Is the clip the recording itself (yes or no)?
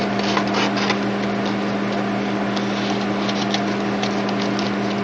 yes